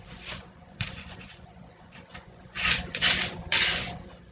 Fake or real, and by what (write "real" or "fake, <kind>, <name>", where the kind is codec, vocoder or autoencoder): fake, vocoder, Vocos